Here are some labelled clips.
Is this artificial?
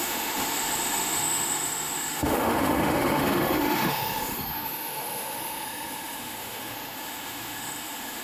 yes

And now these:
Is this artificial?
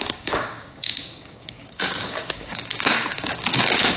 yes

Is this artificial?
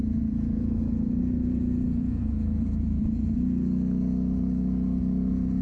yes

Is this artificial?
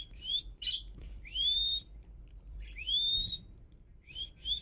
yes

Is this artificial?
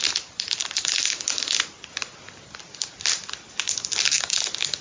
no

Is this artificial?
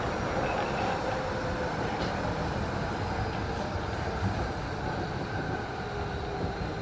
no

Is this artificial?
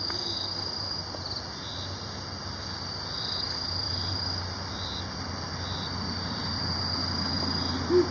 no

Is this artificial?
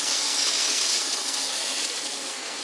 yes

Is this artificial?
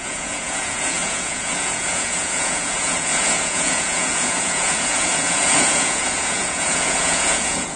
yes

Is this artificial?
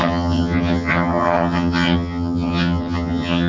yes